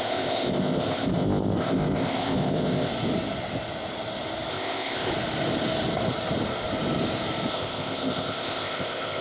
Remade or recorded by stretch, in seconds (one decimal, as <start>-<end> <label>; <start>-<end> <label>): 0.0-2.9 remade; 2.9-4.5 recorded; 4.5-5.1 remade; 5.1-7.5 recorded; 7.5-9.2 remade